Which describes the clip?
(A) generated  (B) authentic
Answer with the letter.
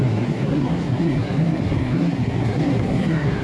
A